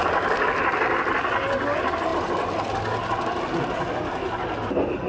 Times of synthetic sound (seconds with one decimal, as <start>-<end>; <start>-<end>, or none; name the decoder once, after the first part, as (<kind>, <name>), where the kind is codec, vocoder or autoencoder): none